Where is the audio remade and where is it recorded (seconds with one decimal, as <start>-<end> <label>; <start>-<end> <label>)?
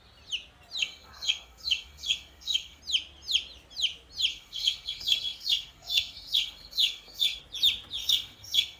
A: 0.0-0.8 recorded; 0.8-2.8 remade; 2.8-4.3 recorded; 4.3-7.4 remade; 7.4-8.0 recorded; 8.0-8.8 remade